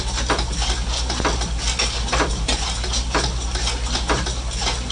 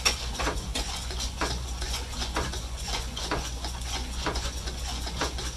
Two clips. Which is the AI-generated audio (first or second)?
second